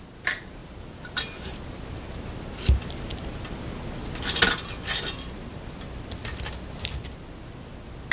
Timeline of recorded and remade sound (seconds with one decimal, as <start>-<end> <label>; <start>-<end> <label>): 0.0-8.1 recorded